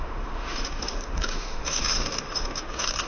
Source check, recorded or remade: remade